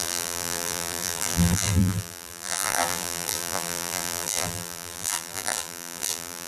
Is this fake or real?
fake